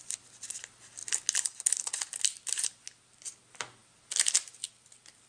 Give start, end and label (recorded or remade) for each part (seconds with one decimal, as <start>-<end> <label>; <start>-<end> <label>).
0.0-5.3 recorded